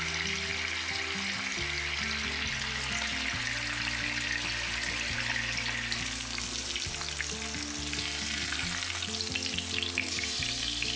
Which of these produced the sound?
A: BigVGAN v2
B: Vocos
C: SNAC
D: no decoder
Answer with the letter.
D